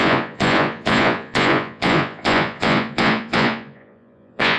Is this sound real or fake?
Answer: fake